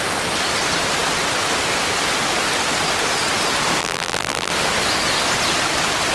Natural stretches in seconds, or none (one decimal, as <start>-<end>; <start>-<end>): 0.0-3.8; 4.5-6.1